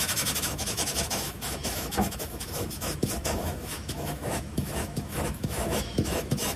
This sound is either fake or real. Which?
fake